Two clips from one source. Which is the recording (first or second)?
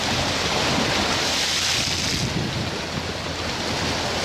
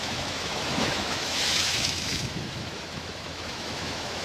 first